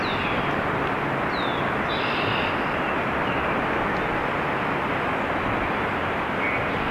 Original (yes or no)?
yes